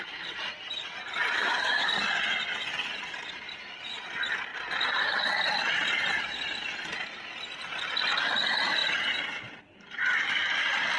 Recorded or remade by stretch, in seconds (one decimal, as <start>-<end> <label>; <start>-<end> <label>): 0.0-1.4 recorded; 1.4-1.9 remade; 1.9-11.0 recorded